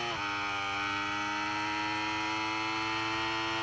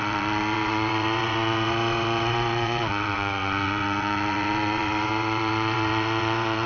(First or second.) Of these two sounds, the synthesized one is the second